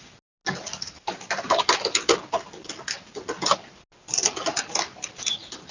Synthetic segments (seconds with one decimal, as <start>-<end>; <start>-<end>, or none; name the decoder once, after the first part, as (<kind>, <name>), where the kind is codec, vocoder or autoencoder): none